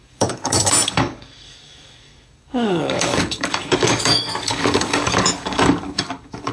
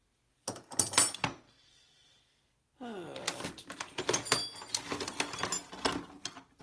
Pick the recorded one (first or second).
second